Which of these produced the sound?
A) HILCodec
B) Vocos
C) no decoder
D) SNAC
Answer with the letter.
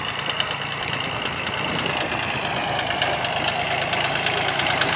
C